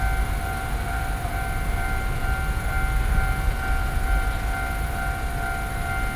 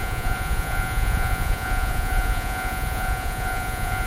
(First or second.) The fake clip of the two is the second